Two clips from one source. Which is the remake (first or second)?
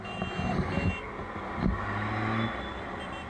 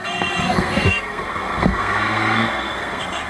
second